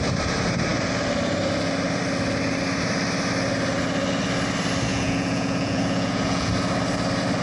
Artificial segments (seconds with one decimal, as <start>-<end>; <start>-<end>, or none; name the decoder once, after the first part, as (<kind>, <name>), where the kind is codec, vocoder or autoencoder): 4.9-6.5 (vocoder, Vocos)